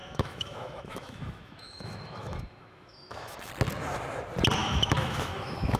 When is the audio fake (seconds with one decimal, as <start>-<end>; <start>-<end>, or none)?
0.0-3.5; 4.6-5.8